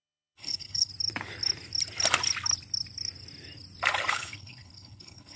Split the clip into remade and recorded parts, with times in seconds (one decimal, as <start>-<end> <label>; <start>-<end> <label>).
0.0-0.9 remade; 0.9-4.1 recorded; 4.1-5.4 remade